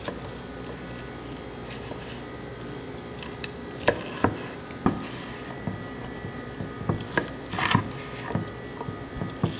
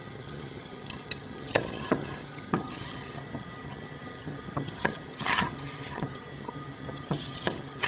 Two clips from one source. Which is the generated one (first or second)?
second